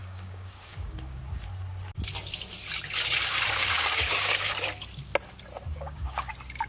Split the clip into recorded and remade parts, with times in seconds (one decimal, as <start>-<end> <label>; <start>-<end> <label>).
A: 0.0-1.2 remade; 1.2-3.6 recorded; 3.6-4.5 remade; 4.5-5.7 recorded; 5.7-6.3 remade; 6.3-6.7 recorded